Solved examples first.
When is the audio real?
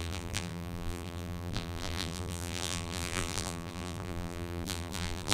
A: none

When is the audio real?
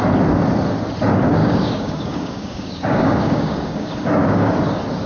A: 0.0-1.4; 4.5-5.1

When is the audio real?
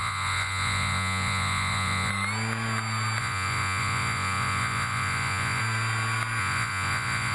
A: 2.1-3.2; 5.6-6.4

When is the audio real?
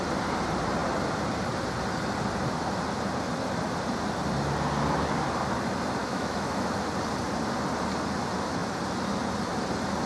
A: 0.0-6.0; 6.7-10.1